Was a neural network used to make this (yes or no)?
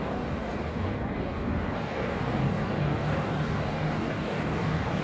yes